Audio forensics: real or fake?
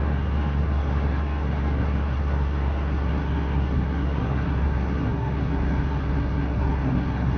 fake